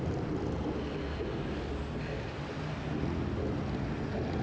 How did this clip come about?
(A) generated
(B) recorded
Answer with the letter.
B